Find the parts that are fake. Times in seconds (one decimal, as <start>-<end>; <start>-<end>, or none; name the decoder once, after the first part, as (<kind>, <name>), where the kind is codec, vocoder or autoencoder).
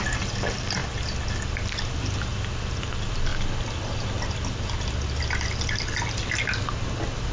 none